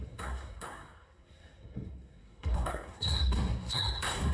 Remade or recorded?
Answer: remade